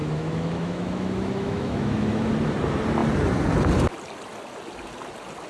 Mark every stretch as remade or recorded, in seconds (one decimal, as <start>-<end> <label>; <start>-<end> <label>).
0.0-2.3 remade; 2.3-5.5 recorded